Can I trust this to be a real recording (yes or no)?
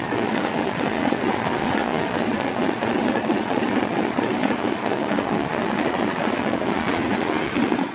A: no